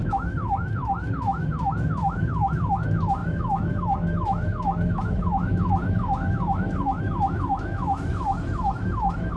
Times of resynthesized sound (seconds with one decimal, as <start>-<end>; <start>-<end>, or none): 0.0-9.4